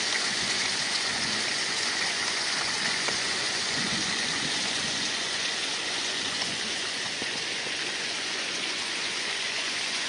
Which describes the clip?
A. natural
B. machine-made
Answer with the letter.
B